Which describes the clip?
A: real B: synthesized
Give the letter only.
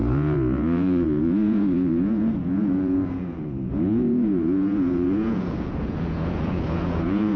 B